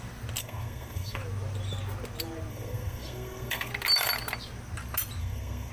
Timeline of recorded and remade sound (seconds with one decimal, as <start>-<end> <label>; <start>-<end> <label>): 0.0-0.4 recorded; 0.4-1.2 remade; 1.2-2.5 recorded; 2.5-3.7 remade; 3.7-5.2 recorded; 5.2-5.7 remade